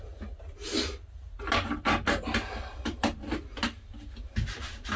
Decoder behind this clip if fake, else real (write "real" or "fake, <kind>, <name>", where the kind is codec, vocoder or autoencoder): real